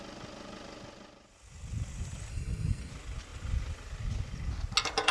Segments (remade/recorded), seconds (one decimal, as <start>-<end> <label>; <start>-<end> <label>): 0.0-2.3 recorded; 2.3-2.9 remade; 2.9-5.1 recorded

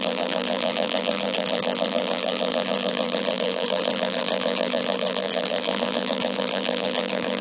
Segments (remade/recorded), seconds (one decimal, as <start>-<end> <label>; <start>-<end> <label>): 0.0-7.4 remade

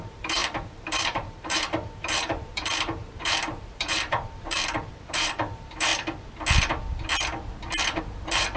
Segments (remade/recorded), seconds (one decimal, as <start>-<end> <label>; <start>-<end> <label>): 0.0-5.9 remade; 5.9-8.0 recorded; 8.0-8.6 remade

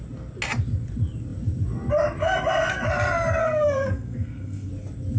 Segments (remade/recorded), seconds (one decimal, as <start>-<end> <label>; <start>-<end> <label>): 0.0-3.4 recorded; 3.4-4.7 remade; 4.7-5.2 recorded

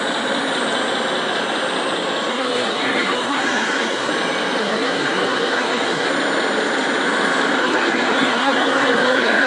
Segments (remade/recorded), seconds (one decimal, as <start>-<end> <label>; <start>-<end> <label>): 0.0-2.3 recorded; 2.3-4.1 remade; 4.1-4.6 recorded; 4.6-6.1 remade; 6.1-7.6 recorded; 7.6-9.5 remade

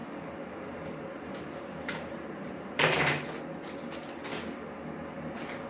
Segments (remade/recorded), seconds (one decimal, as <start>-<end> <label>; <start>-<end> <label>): 0.0-3.4 remade; 3.4-5.7 recorded

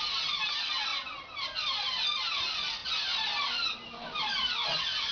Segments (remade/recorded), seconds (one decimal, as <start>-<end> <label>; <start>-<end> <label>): 0.0-5.1 recorded